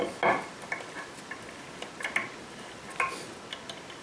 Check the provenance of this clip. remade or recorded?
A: recorded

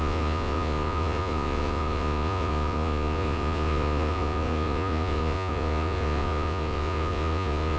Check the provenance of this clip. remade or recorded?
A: remade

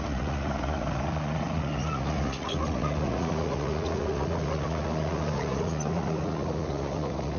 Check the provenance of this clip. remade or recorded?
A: remade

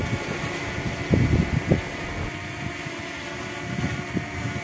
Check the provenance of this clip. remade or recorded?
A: recorded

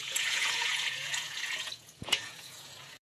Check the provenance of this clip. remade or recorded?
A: remade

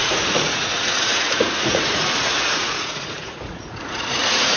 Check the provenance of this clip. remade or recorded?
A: remade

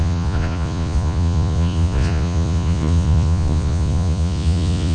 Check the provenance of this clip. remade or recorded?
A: remade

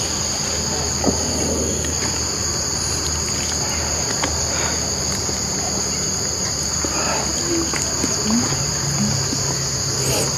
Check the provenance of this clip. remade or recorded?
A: recorded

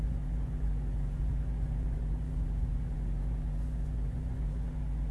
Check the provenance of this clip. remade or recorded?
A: remade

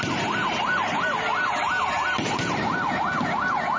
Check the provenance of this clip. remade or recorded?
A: recorded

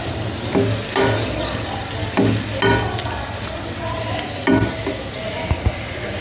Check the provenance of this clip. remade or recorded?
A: recorded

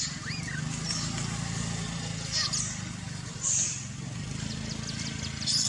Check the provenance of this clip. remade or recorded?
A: recorded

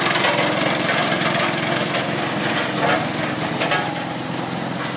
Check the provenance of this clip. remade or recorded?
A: recorded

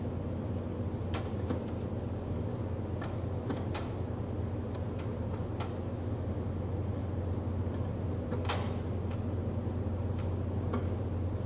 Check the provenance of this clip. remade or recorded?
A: recorded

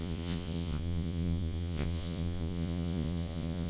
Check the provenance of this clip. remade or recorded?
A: remade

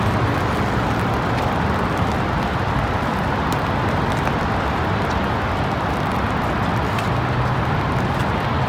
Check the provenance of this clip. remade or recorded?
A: recorded